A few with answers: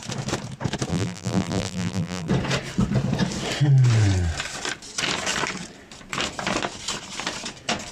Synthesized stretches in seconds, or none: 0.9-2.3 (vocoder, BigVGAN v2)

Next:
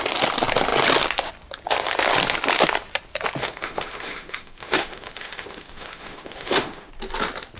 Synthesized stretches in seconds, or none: 3.4-6.9 (autoencoder, DAC-VAE)

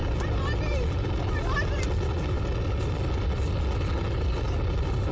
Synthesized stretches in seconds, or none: none

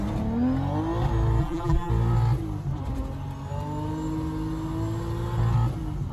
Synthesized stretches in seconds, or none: 1.4-1.9 (vocoder, BigVGAN v2)

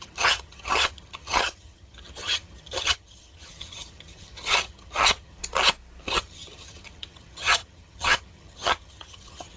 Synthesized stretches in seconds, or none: 0.0-5.4 (vocoder, HiFi-GAN); 6.0-9.6

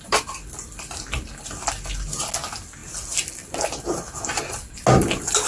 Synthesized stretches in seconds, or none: none